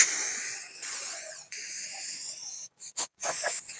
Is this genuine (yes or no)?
no